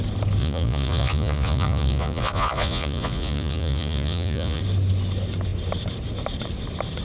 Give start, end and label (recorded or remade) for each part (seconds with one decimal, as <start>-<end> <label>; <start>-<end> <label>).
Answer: 0.0-0.4 recorded; 0.4-4.6 remade; 4.6-7.0 recorded